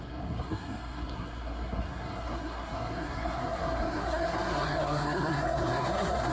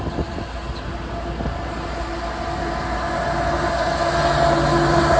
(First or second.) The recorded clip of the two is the second